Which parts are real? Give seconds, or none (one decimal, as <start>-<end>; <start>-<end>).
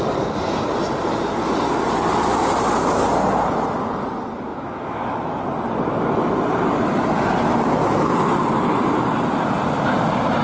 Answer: 0.0-4.5; 5.2-10.4